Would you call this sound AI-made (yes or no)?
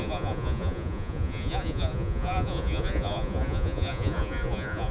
yes